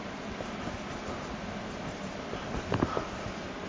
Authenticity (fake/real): real